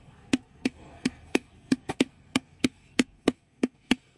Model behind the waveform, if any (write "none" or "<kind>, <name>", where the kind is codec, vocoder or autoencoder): codec, SNAC